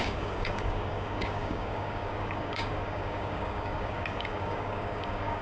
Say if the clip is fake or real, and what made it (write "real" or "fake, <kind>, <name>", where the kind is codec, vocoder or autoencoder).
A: fake, codec, DAC